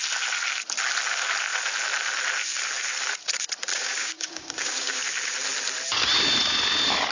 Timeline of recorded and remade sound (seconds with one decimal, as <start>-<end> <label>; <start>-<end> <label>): 0.0-3.7 recorded; 3.7-5.0 remade; 5.0-7.1 recorded